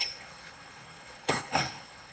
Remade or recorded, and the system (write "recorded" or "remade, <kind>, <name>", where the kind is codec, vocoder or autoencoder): remade, codec, HILCodec